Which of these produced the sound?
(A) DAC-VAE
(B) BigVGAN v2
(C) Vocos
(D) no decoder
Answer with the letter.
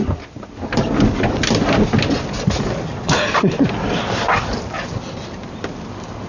D